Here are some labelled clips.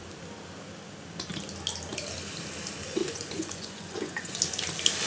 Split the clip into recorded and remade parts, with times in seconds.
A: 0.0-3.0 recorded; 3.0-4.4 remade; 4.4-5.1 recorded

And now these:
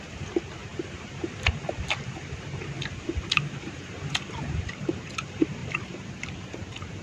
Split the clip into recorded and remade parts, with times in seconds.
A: 0.0-7.0 remade

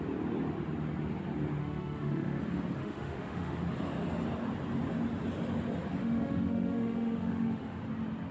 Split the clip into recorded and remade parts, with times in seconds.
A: 0.0-1.6 recorded; 1.6-2.4 remade; 2.4-2.8 recorded; 2.8-3.6 remade; 3.6-6.0 recorded; 6.0-7.8 remade; 7.8-8.3 recorded